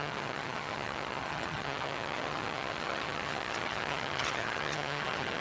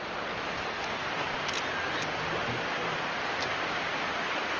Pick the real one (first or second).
second